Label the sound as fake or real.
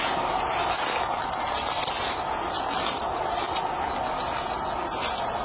real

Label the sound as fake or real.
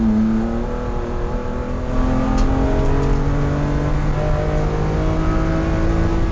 real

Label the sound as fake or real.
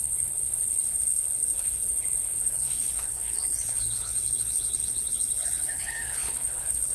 fake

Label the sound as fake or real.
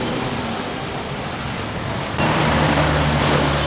real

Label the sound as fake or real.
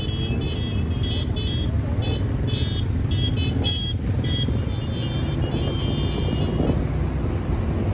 real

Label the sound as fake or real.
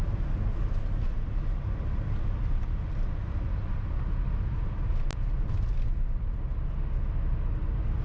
real